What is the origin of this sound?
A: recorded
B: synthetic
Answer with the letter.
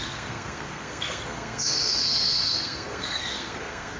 B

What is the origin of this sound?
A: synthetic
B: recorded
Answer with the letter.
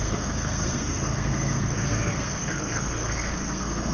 A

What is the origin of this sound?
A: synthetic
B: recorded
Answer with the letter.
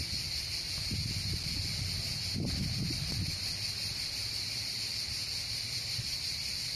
A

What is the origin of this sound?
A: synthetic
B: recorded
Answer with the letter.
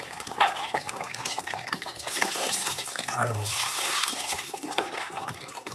A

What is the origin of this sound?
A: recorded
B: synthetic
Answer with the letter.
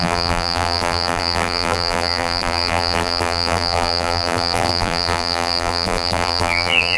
B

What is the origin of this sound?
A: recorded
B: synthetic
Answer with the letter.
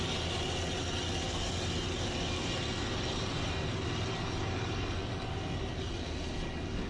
A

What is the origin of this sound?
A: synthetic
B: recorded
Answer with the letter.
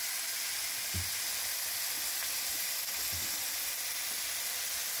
B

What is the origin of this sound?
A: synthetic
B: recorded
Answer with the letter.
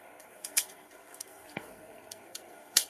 A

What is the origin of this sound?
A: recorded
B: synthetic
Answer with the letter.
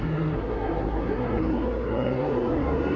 B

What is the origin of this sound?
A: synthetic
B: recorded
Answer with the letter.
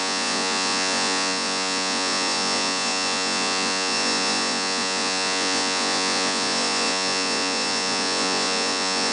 A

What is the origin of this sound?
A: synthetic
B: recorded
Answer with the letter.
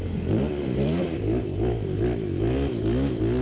B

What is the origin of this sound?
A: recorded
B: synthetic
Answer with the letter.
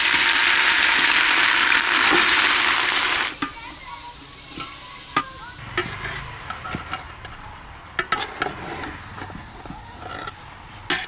A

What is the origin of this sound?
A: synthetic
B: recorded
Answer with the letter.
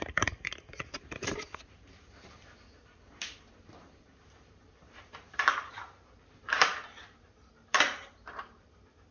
A